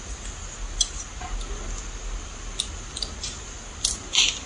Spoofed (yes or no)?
no